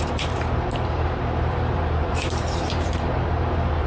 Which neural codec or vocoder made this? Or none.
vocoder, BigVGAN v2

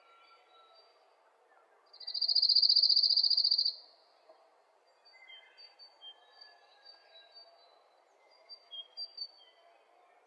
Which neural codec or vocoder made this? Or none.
none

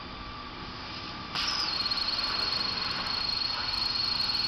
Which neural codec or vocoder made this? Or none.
vocoder, BigVGAN v2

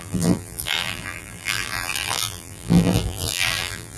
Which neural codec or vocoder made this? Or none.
vocoder, BigVGAN v2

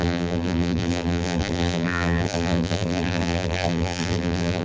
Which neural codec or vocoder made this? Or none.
vocoder, BigVGAN v2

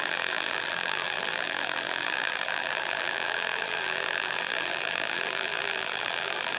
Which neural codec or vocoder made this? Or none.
vocoder, BigVGAN v2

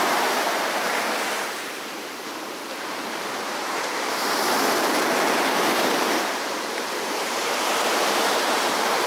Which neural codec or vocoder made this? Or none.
vocoder, BigVGAN v2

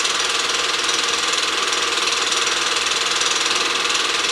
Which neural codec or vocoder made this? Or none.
none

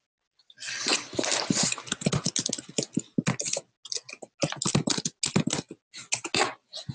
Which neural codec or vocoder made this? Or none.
none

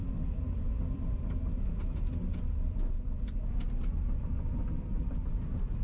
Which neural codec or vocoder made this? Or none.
vocoder, BigVGAN v2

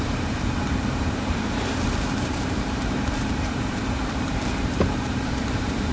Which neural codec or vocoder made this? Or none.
vocoder, BigVGAN v2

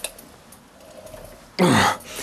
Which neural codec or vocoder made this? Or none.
none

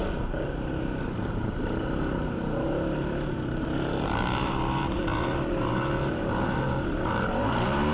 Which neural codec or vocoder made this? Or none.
vocoder, BigVGAN v2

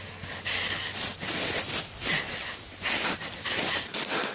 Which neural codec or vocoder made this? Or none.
none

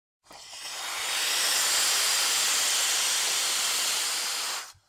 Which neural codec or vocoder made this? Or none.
none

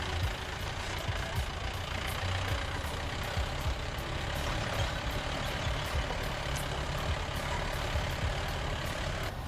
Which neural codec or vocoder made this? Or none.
vocoder, BigVGAN v2